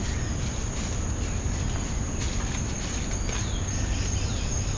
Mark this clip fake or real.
real